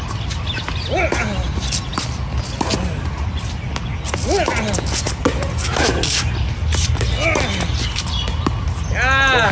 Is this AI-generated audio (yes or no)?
no